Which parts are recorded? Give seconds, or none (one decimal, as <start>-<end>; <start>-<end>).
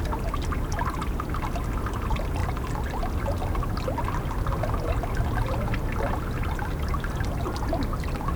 0.0-8.4